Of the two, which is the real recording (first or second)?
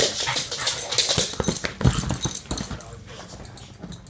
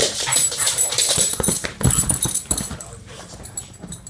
first